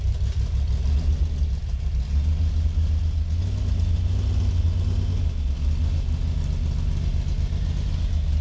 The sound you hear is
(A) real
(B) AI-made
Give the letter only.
A